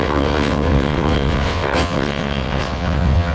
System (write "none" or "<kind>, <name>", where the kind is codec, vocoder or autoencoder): vocoder, WaveNeXt